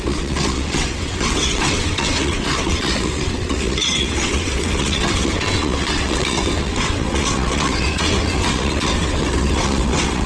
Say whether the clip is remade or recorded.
remade